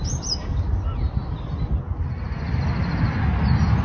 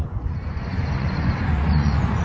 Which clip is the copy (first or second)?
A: second